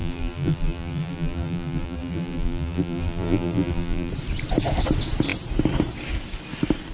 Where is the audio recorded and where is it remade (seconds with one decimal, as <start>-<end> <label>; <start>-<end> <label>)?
0.0-4.1 remade; 4.1-6.9 recorded